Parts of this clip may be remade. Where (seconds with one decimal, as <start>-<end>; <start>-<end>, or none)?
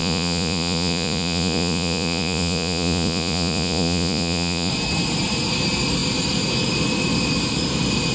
0.0-4.7